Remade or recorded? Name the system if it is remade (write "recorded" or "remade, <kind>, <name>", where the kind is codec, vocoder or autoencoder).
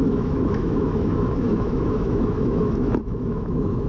remade, autoencoder, DAC-VAE